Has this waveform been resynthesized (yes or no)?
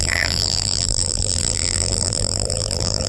yes